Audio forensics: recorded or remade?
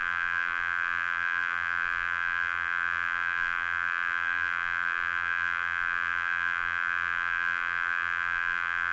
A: remade